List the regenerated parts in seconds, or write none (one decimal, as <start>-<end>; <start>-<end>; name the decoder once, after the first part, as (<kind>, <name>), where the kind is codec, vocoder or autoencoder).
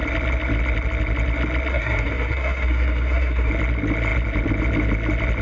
1.7-3.5 (codec, SNAC)